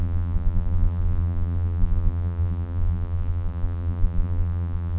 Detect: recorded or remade remade